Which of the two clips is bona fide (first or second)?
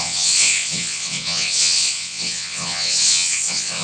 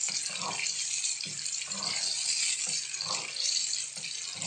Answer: second